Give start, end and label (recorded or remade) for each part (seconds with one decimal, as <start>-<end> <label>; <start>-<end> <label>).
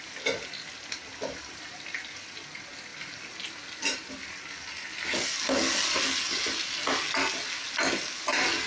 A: 0.0-8.7 recorded